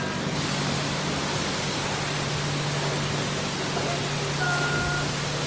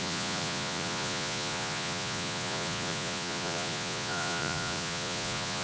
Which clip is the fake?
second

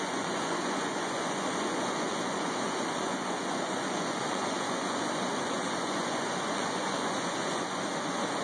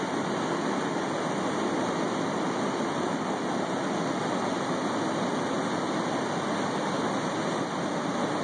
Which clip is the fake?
first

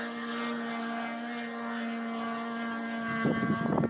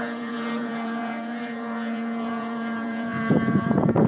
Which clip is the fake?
second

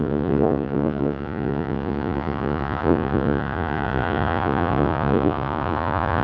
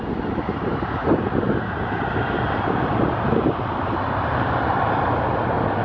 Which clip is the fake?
first